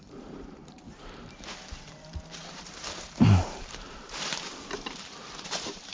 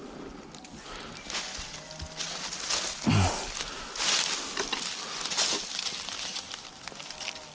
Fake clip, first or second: first